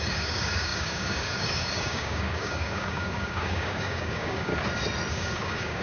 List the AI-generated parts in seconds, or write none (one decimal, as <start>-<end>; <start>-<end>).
0.0-4.5; 5.1-5.8